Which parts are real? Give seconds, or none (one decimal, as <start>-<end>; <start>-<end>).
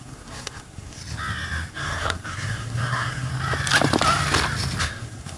1.0-1.7; 3.3-4.8